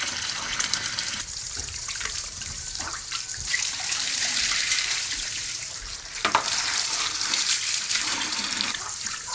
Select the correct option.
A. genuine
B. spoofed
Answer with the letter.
B